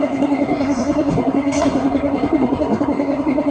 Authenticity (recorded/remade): remade